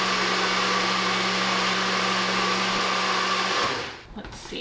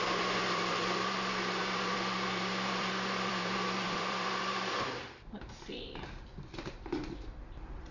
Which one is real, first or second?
first